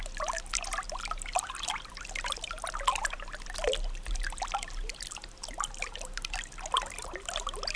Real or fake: real